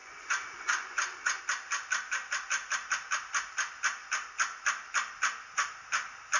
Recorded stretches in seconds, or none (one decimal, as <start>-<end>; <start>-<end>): 1.4-6.4